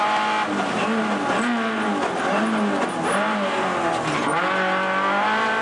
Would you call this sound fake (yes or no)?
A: no